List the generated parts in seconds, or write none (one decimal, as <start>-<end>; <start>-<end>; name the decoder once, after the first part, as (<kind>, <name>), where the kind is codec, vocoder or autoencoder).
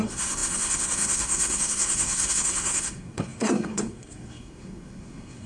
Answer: 0.0-5.5 (codec, SNAC)